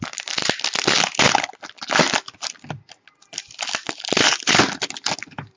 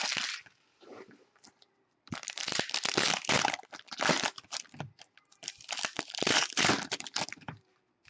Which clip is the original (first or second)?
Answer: first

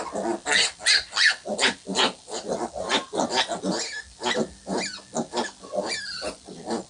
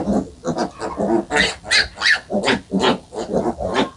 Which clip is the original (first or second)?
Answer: second